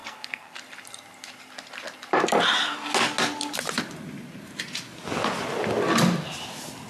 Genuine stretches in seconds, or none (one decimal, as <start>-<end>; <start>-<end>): 0.6-6.9